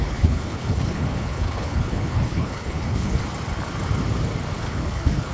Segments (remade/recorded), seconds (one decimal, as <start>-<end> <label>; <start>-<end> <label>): 0.0-3.2 remade; 3.2-4.6 recorded; 4.6-5.3 remade